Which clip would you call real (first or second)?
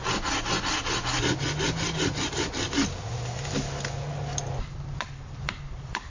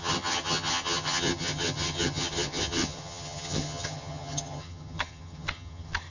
first